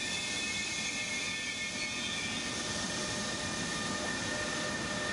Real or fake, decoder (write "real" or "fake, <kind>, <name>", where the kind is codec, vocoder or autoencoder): real